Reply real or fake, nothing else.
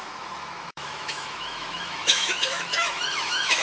fake